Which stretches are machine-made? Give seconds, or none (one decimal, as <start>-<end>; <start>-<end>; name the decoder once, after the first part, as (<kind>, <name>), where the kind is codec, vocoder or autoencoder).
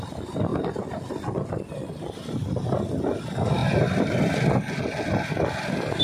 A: none